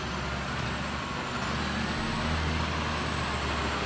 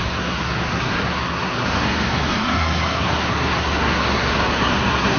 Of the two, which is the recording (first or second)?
first